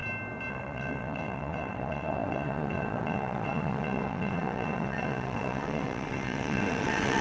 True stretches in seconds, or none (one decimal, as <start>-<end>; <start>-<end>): 0.0-0.5